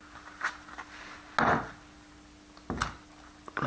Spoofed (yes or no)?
no